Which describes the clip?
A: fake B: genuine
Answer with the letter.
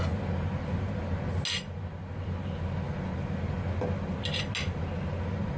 B